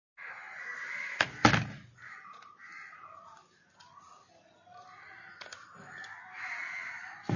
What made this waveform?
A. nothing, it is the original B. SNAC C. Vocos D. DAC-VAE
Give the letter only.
A